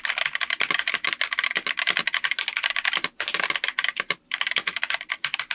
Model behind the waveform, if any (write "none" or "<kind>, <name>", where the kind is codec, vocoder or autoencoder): none